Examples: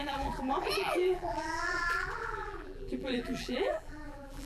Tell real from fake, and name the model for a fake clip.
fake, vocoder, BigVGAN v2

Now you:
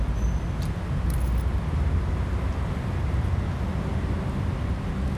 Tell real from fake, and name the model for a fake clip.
real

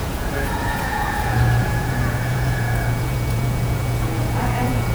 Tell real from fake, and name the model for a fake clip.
fake, vocoder, Vocos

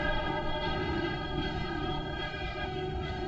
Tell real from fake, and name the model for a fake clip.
fake, autoencoder, DAC-VAE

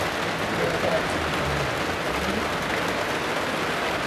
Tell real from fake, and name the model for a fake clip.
real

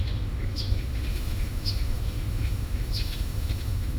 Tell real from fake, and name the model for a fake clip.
fake, autoencoder, DAC-VAE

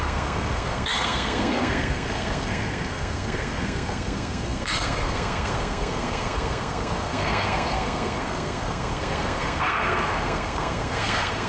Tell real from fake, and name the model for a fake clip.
fake, codec, SNAC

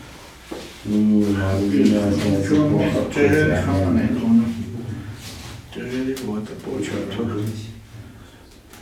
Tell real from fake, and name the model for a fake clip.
real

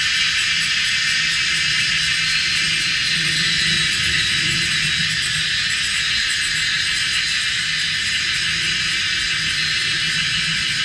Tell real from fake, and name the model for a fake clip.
real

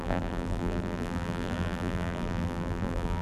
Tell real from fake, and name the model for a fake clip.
fake, vocoder, BigVGAN v2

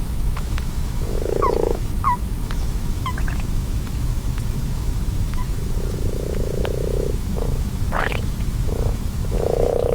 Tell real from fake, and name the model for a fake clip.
fake, autoencoder, DAC-VAE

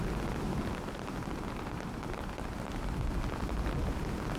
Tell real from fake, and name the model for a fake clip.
real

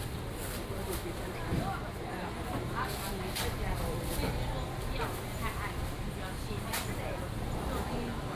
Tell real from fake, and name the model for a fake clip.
real